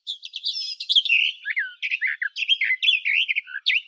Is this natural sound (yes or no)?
yes